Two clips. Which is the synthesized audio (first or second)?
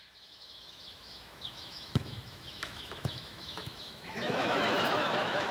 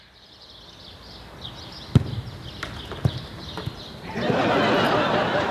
first